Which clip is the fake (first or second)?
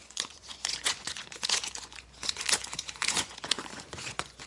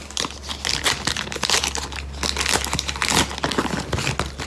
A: first